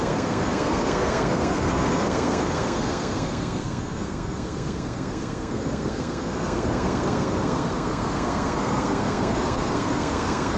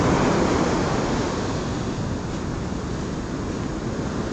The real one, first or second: second